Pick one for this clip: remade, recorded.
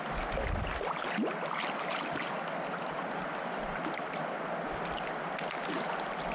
recorded